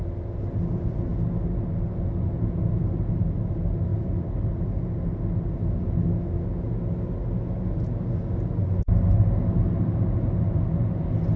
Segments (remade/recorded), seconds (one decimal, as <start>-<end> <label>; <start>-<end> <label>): 0.0-11.4 recorded